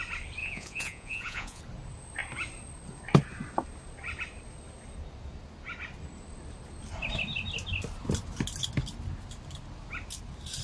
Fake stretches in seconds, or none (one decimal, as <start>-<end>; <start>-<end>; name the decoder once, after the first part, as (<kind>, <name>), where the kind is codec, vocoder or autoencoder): 0.4-1.6 (vocoder, Vocos)